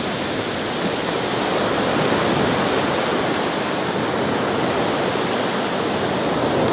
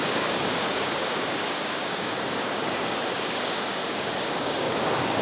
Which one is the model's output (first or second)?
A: second